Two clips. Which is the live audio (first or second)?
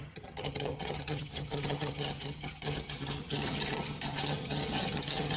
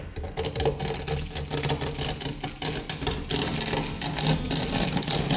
second